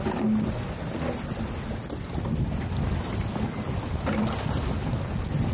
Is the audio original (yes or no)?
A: yes